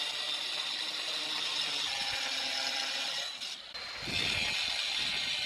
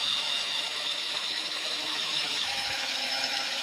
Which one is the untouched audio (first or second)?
first